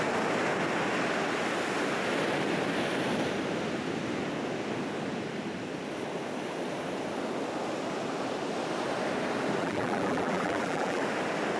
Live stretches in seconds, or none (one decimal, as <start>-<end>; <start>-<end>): 0.0-9.6; 11.0-11.6